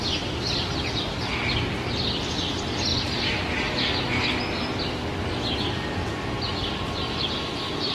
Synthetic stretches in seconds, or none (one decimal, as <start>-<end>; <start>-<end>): none